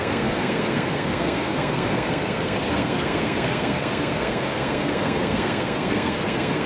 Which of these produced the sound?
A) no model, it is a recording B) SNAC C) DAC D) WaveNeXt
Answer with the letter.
B